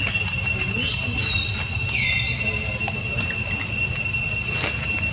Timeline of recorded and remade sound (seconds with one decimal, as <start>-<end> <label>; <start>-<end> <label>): 0.0-5.1 recorded